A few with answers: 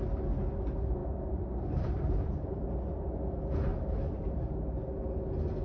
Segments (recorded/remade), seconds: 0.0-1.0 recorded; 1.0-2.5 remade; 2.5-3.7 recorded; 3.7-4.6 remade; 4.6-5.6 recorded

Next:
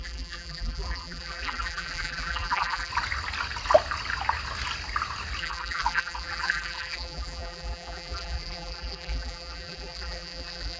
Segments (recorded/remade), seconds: 0.0-2.9 remade; 2.9-5.4 recorded; 5.4-10.8 remade

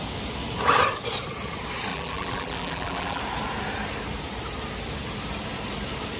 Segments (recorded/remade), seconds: 0.0-1.9 recorded; 1.9-3.2 remade; 3.2-6.2 recorded